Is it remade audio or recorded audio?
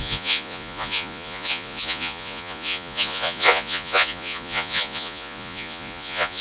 remade